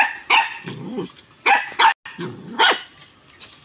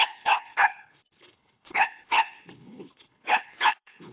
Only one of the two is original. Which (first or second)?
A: first